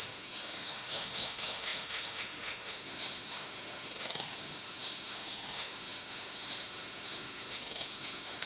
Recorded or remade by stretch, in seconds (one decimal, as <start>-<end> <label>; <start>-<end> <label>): 0.0-8.5 remade